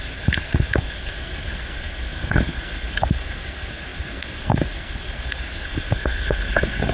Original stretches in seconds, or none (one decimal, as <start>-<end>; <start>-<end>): none